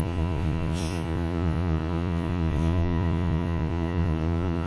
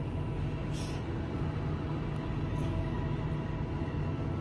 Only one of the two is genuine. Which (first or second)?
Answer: second